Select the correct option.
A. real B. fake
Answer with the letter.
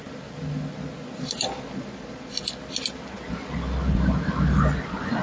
A